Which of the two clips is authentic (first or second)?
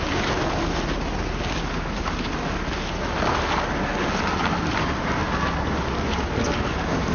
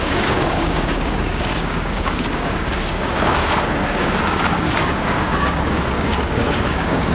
first